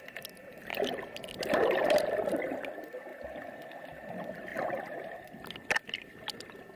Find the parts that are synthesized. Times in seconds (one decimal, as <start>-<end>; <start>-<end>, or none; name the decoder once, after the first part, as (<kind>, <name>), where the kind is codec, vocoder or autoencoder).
0.0-0.7 (vocoder, BigVGAN v2); 2.3-4.5